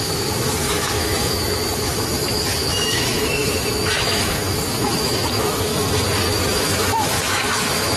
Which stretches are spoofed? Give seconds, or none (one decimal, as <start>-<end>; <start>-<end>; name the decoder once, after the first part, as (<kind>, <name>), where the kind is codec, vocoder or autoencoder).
0.0-5.7 (autoencoder, DAC-VAE); 6.5-8.0